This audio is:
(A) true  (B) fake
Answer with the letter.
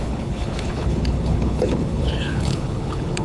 B